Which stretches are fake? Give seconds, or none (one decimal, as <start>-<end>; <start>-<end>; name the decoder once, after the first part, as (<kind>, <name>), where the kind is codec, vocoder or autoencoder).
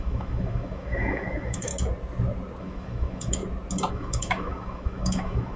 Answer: 0.0-1.7 (autoencoder, DAC-VAE); 2.6-3.4; 3.9-5.6